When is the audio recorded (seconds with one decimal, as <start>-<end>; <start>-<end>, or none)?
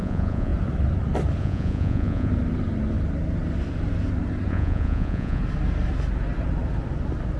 0.5-1.4; 2.3-4.5; 5.4-7.4